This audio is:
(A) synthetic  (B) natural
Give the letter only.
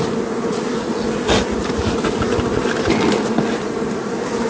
B